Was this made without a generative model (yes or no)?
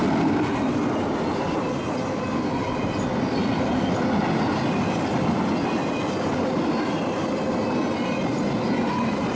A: yes